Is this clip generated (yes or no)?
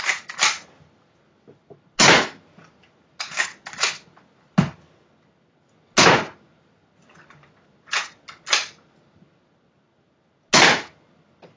no